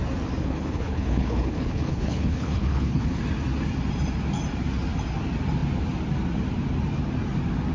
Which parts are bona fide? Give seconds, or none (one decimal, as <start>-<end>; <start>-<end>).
0.0-0.4; 3.2-7.7